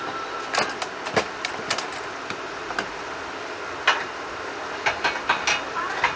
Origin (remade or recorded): recorded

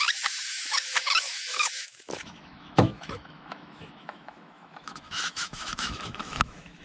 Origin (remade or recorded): remade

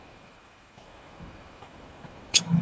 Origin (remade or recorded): remade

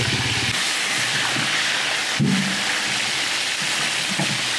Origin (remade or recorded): recorded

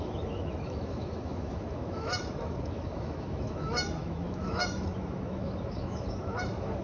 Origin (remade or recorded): remade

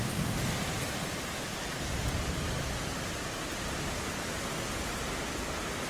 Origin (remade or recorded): recorded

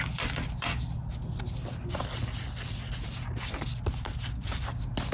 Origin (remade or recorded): recorded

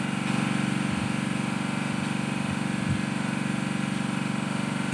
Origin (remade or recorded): recorded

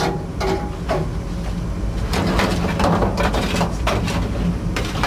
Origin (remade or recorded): recorded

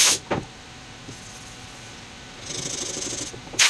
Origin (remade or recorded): recorded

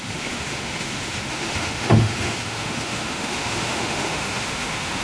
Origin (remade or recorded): remade